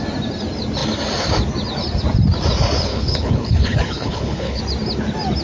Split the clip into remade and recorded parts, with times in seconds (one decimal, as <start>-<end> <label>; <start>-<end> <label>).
0.0-2.9 recorded; 2.9-4.6 remade; 4.6-5.4 recorded